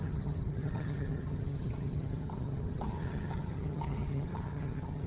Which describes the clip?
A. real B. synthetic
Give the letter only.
B